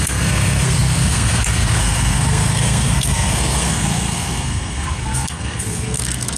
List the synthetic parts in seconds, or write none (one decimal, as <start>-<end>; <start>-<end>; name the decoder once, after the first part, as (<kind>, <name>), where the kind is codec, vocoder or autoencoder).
0.0-6.4 (codec, SNAC)